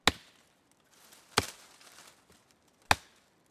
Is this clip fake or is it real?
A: real